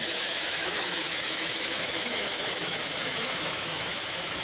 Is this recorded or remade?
remade